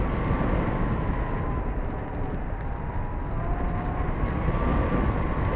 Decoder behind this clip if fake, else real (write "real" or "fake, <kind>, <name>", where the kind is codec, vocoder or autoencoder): real